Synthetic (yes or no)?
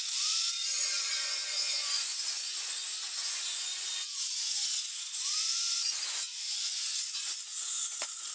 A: yes